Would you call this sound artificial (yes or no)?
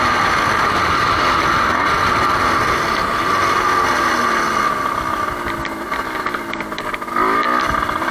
no